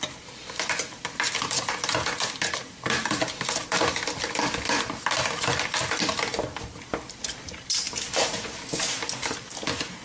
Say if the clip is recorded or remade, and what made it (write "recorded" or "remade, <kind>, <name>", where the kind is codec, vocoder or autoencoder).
recorded